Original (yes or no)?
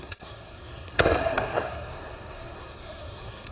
no